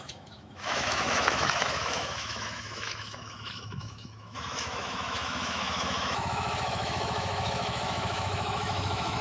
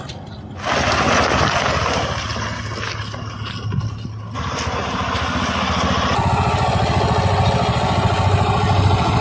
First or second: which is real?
second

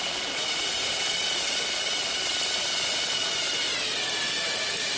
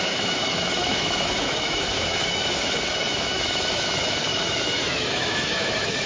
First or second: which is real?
first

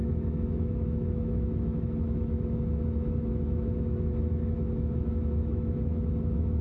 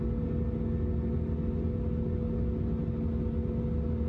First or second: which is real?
second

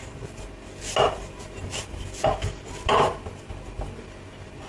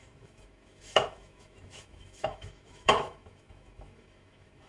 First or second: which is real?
first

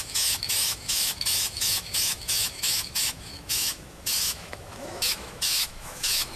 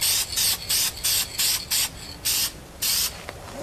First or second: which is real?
second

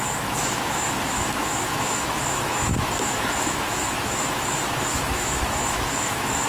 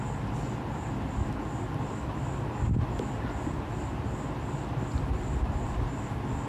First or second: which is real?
second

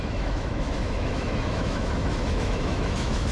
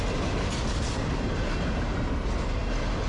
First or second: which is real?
second